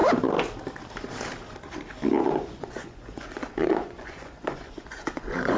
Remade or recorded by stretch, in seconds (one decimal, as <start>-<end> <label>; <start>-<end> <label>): 0.0-2.2 recorded; 2.2-5.6 remade